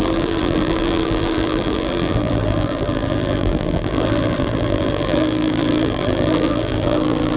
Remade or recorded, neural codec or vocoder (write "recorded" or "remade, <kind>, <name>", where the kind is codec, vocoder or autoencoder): remade, vocoder, BigVGAN v2